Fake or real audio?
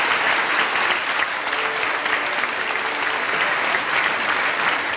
real